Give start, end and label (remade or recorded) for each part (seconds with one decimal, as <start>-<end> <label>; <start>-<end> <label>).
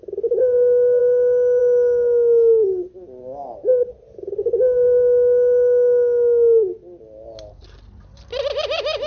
0.0-9.1 recorded